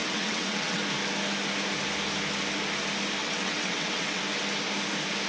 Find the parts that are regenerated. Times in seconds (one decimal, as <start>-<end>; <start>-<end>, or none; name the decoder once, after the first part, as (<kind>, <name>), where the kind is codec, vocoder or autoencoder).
0.0-0.8 (vocoder, WaveNeXt); 3.2-4.2